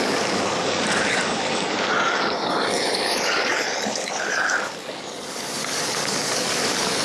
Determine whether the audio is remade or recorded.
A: remade